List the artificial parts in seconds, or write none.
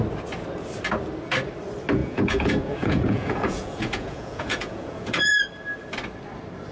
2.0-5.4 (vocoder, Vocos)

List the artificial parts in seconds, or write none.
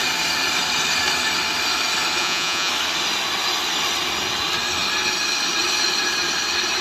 2.2-2.7 (vocoder, Vocos)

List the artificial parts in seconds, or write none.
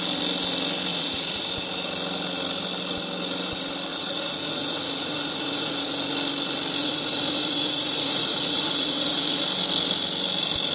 0.9-1.5 (vocoder, Vocos); 3.9-5.9; 6.8-9.4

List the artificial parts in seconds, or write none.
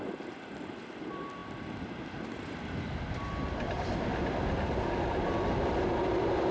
none